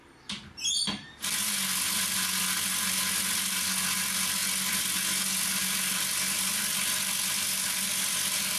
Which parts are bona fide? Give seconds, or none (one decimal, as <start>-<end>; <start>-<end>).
0.0-8.6

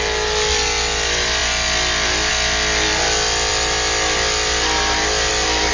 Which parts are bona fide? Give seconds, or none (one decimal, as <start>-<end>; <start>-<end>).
0.0-5.7

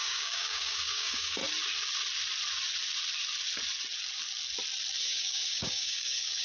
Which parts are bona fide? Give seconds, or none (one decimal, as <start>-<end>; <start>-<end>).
1.4-5.0

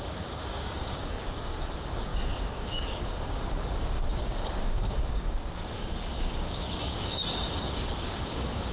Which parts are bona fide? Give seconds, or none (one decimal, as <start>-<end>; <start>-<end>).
none